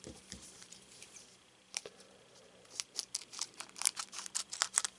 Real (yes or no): no